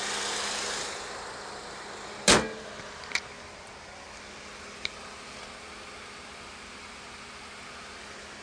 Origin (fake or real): real